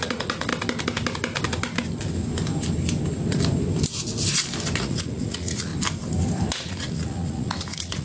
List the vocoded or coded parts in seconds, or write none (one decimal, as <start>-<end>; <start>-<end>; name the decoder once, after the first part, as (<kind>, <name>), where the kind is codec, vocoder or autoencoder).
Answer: 0.0-0.5 (vocoder, Vocos); 4.8-5.7; 6.5-8.0